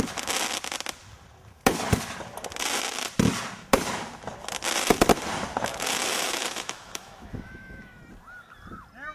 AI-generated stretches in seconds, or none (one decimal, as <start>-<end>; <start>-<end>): 5.7-8.0